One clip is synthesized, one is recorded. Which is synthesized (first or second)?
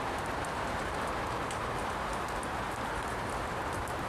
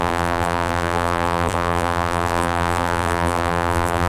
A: second